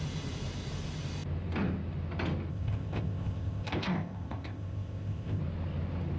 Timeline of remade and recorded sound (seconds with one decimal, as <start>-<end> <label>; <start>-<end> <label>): 0.0-2.5 recorded; 2.5-5.4 remade; 5.4-6.2 recorded

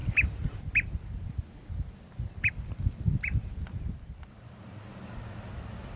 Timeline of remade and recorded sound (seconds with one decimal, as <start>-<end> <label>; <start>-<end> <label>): 0.0-6.0 recorded

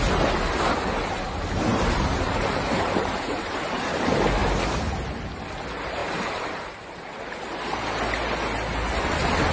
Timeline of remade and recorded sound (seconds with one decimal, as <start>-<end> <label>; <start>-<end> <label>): 0.0-1.7 recorded; 1.7-3.7 remade; 3.7-6.0 recorded; 6.0-6.8 remade; 6.8-9.5 recorded

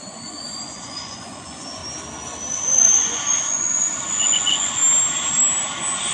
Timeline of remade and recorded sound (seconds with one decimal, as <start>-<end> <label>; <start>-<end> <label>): 0.0-1.8 remade; 1.8-2.5 recorded; 2.5-4.8 remade; 4.8-6.1 recorded

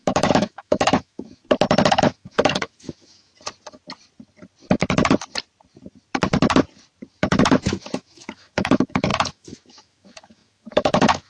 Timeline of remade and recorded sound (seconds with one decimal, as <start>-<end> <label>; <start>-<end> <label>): 0.0-1.4 remade; 1.4-1.9 recorded; 1.9-3.3 remade; 3.3-7.2 recorded; 7.2-11.3 remade

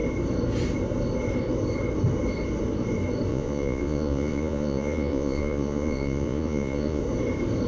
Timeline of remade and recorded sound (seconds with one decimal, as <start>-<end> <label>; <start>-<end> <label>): 0.0-3.3 recorded; 3.3-7.0 remade; 7.0-7.7 recorded